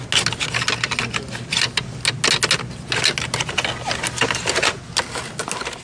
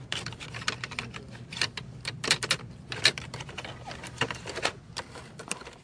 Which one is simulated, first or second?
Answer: second